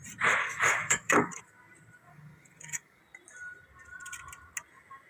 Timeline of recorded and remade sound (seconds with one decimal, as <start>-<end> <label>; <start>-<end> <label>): 0.0-0.4 recorded; 0.4-1.4 remade; 1.4-2.1 recorded; 2.1-3.0 remade; 3.0-5.1 recorded